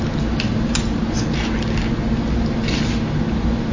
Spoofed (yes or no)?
no